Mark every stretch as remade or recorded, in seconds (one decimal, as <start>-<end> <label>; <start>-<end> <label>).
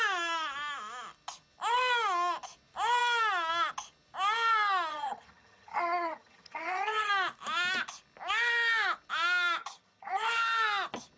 0.0-4.9 recorded; 4.9-7.1 remade; 7.1-9.6 recorded; 9.6-10.3 remade; 10.3-11.2 recorded